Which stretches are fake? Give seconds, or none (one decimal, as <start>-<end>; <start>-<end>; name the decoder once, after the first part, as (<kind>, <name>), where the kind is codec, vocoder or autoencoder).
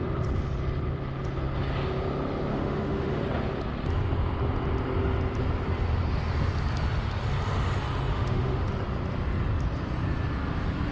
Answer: 2.5-3.2 (autoencoder, DAC-VAE); 8.1-8.7